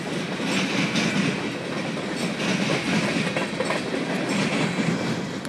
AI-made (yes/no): no